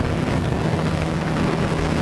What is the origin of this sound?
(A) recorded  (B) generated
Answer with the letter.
B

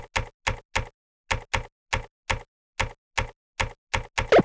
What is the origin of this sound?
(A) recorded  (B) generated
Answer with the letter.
A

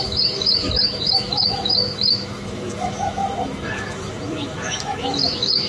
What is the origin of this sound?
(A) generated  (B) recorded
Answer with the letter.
A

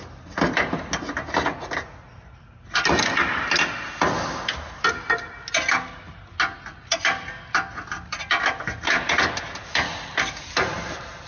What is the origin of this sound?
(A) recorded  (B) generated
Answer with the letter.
A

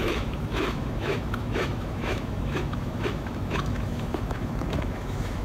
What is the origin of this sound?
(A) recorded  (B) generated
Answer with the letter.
B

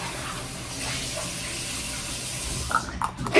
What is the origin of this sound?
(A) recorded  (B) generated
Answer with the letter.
A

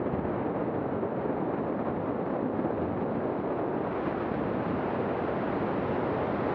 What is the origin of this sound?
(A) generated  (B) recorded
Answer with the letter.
B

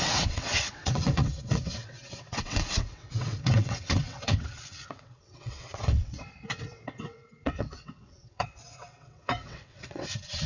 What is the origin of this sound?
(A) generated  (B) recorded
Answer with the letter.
A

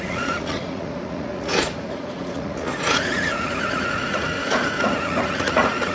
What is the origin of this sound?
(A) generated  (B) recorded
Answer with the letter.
A